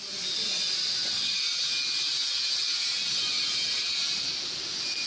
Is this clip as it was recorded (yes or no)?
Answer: yes